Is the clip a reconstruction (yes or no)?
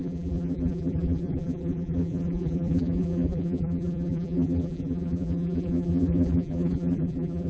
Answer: yes